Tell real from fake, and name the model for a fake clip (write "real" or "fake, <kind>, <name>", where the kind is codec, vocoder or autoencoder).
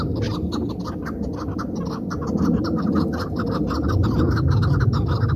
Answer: real